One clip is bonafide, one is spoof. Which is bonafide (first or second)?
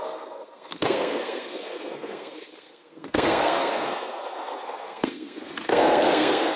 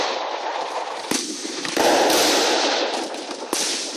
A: second